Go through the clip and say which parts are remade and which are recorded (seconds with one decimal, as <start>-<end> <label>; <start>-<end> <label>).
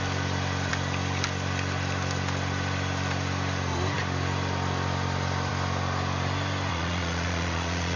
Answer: 0.0-6.7 recorded; 6.7-8.0 remade